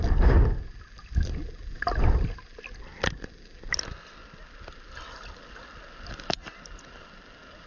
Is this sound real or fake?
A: real